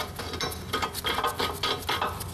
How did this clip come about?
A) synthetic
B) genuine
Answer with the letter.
B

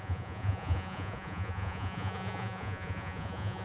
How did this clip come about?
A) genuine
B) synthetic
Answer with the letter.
B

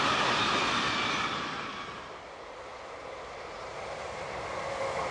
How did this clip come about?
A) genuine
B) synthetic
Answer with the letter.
A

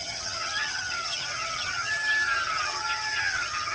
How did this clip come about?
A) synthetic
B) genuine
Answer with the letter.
A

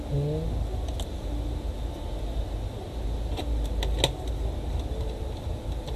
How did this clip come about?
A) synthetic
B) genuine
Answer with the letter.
B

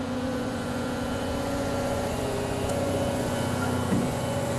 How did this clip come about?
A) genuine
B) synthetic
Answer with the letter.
B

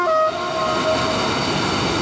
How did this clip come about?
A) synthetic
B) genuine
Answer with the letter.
B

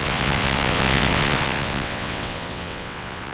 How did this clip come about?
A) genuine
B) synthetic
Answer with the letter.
B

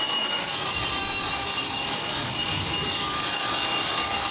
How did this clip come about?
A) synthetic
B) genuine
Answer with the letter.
A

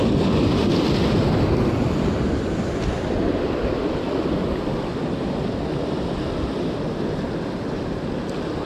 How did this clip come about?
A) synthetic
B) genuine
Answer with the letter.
B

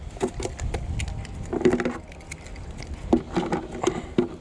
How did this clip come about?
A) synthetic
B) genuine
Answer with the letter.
B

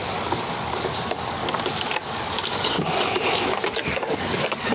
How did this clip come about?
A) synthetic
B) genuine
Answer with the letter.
A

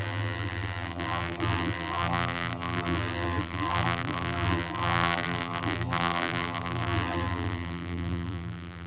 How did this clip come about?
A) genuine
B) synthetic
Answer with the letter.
B